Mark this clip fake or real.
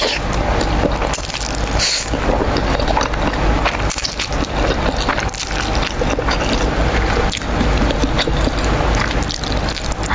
real